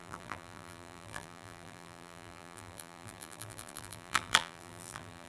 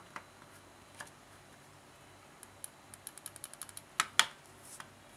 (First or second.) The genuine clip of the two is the second